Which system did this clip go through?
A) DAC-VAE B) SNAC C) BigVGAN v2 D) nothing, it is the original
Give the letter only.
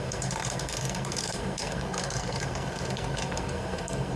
B